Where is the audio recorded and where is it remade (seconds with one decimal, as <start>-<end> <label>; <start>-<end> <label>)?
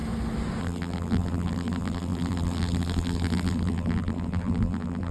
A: 0.0-0.6 recorded; 0.6-5.1 remade